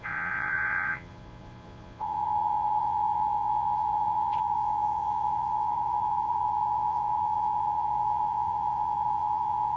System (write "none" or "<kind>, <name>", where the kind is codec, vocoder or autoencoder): vocoder, Vocos